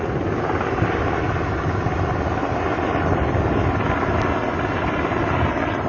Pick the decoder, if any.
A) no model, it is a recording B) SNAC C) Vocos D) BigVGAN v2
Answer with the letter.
A